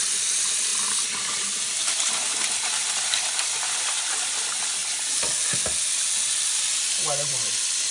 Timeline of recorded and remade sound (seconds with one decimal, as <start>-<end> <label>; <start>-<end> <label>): 0.0-7.9 recorded